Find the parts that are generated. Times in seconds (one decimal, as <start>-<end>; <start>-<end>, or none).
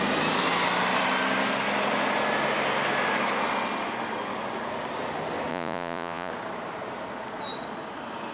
5.5-6.3